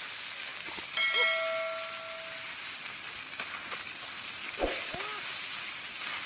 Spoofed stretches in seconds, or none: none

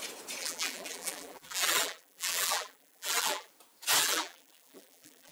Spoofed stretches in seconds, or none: 0.4-3.5; 4.0-5.3

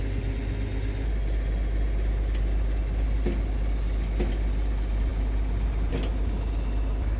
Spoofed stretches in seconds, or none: none

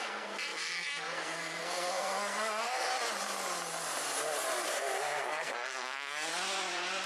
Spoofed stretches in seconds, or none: 0.0-2.9; 4.7-6.3

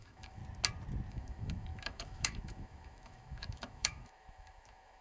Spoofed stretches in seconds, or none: 0.0-0.4; 1.1-5.0

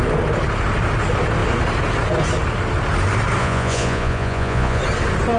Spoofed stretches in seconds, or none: 3.4-4.8

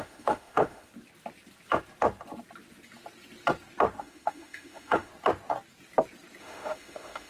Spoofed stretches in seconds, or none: 0.0-0.9; 4.0-5.1; 6.4-7.3

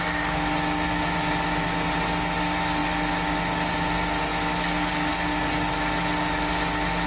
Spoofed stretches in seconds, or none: none